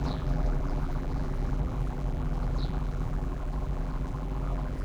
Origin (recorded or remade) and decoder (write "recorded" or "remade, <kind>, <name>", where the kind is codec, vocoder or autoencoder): remade, vocoder, BigVGAN v2